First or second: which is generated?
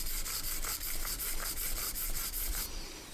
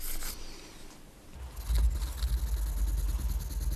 first